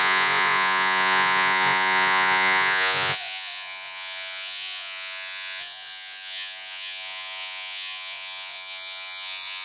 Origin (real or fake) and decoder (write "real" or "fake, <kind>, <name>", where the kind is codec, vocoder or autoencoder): fake, vocoder, Vocos